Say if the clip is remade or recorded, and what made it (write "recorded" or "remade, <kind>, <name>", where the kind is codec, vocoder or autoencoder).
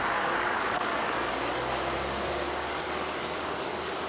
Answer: remade, codec, DAC